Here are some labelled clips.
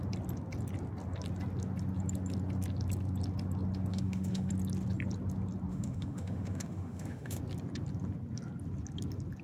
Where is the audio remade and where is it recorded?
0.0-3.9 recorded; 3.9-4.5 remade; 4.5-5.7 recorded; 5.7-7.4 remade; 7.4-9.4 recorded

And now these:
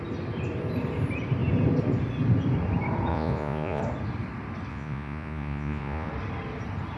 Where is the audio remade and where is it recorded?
0.0-3.1 recorded; 3.1-3.8 remade; 3.8-4.7 recorded; 4.7-6.1 remade; 6.1-7.0 recorded

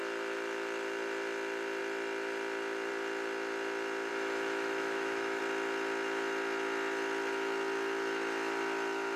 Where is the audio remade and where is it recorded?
0.0-4.1 recorded; 4.1-5.4 remade; 5.4-9.2 recorded